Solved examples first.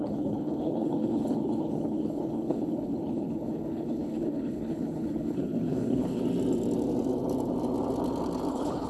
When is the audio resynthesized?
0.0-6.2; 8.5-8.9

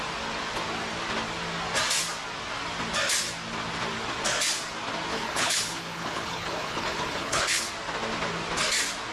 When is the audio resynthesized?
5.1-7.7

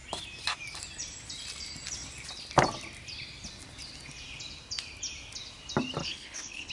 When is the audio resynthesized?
6.0-6.7

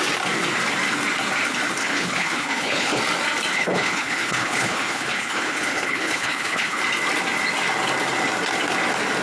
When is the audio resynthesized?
1.8-3.0; 3.5-6.8